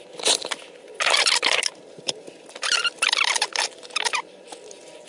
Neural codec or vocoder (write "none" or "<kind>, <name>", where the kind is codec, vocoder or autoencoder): none